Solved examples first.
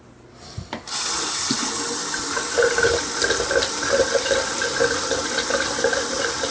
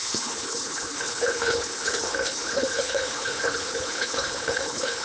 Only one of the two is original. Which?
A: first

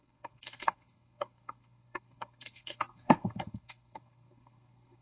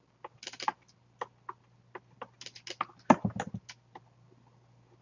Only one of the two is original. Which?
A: second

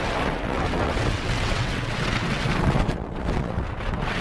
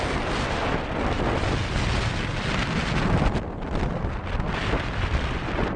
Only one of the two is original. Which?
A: second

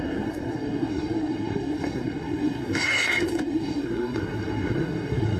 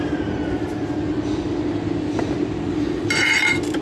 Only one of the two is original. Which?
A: second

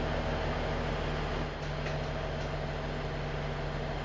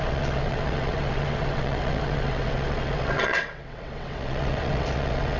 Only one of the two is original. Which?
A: first